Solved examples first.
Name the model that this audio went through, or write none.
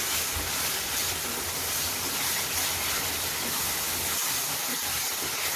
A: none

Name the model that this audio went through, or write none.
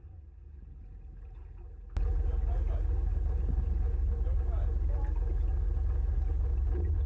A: none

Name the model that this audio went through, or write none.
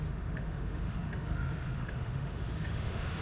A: autoencoder, DAC-VAE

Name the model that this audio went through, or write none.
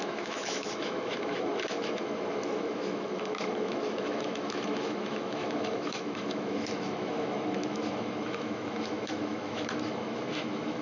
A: autoencoder, DAC-VAE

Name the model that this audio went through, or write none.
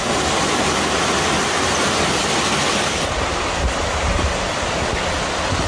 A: none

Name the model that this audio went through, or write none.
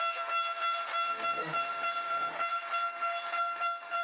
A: autoencoder, DAC-VAE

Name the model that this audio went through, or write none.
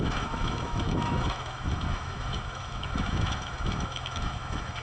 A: autoencoder, DAC-VAE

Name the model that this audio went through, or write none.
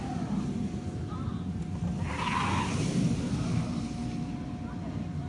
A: none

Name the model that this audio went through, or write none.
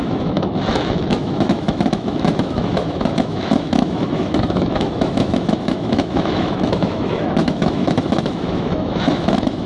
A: autoencoder, DAC-VAE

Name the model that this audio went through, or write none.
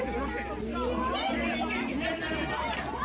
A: none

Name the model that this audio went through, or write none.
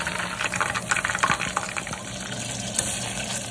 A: none